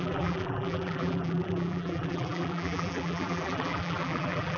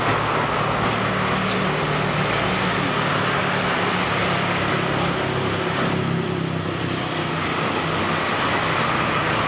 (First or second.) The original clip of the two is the second